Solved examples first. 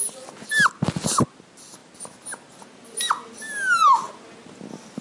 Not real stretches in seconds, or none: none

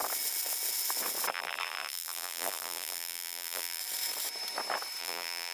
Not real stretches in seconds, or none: 1.3-3.8 (vocoder, BigVGAN v2); 5.0-5.5

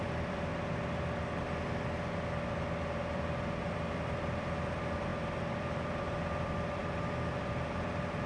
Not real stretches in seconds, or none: 0.0-0.5 (vocoder, BigVGAN v2); 3.6-8.3

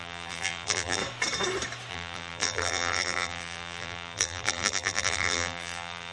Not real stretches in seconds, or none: 0.0-1.0 (vocoder, BigVGAN v2); 1.9-6.1

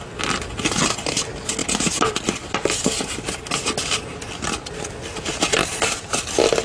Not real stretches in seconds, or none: none

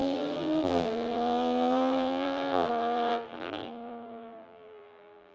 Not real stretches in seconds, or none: 0.0-5.3 (vocoder, BigVGAN v2)

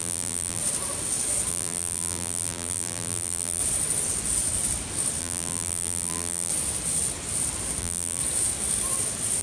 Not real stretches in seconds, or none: 0.0-0.6 (vocoder, BigVGAN v2); 1.5-3.6; 5.2-6.5; 7.8-8.2